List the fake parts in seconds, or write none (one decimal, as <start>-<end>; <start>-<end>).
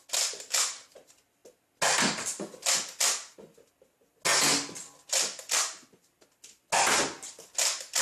none